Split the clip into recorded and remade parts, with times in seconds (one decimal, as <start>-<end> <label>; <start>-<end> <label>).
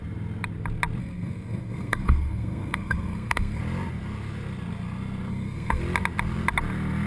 0.0-1.0 recorded; 1.0-3.6 remade; 3.6-5.3 recorded; 5.3-5.8 remade; 5.8-7.1 recorded